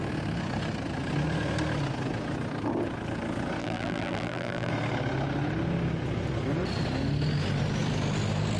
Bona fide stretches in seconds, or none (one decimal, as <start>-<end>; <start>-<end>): 0.0-3.6; 4.7-8.6